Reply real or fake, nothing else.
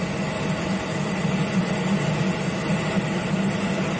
real